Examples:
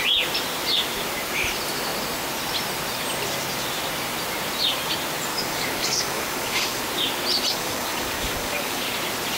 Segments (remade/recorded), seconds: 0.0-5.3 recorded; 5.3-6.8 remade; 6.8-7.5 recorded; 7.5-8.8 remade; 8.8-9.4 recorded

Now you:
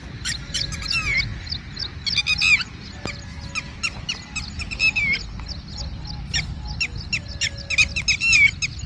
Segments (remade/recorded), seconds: 0.0-8.9 recorded

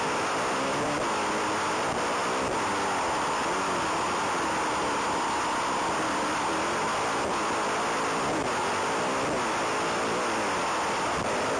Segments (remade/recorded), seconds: 0.0-11.6 recorded

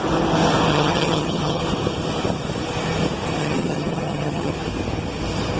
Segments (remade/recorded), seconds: 0.0-0.7 recorded; 0.7-1.6 remade; 1.6-3.4 recorded; 3.4-4.5 remade; 4.5-5.6 recorded

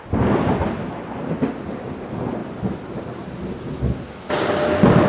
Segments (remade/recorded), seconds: 0.0-5.1 recorded

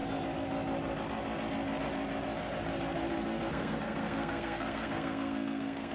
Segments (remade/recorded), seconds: 0.0-3.5 recorded; 3.5-5.9 remade